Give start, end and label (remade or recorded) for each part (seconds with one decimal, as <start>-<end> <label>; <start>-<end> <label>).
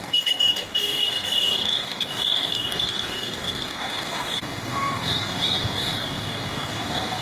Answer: 0.0-7.2 remade